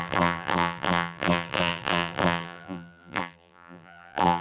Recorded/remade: remade